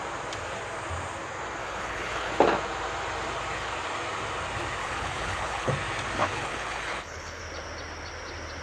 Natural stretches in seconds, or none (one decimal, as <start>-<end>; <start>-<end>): 0.0-1.6; 2.3-4.8; 5.7-6.2; 7.4-8.6